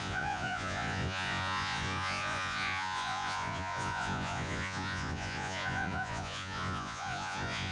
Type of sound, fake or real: fake